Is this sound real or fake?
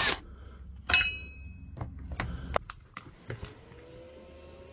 real